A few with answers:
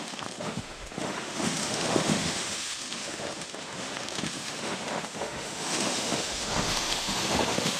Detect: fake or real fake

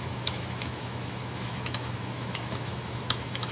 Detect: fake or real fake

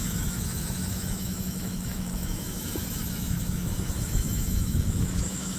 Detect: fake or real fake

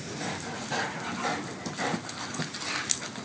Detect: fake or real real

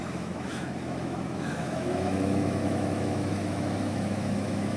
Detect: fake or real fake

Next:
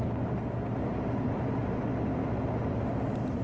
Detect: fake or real real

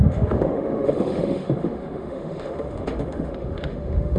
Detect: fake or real fake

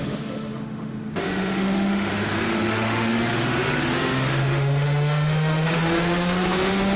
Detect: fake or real fake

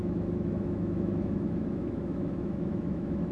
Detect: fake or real fake